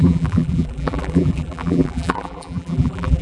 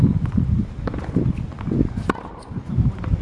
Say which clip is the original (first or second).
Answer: second